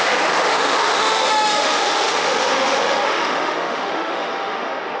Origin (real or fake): fake